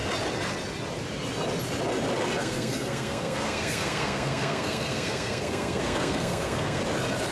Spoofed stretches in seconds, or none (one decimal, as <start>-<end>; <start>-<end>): 2.4-6.8